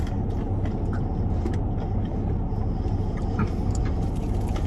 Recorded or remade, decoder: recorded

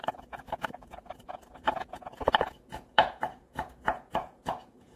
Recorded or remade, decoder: remade, vocoder, Vocos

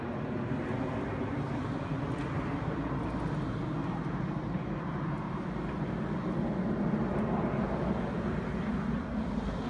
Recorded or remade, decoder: recorded